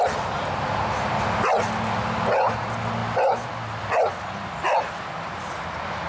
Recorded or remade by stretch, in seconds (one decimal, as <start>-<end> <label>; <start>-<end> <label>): 0.0-6.1 recorded